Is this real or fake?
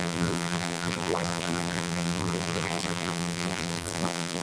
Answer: fake